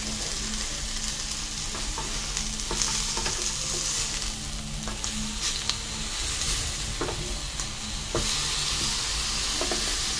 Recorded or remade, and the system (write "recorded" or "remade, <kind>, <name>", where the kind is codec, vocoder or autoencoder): recorded